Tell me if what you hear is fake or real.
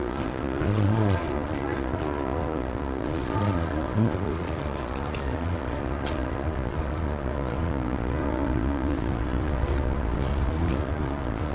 fake